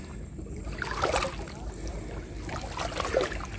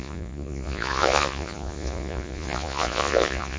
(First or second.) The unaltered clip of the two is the first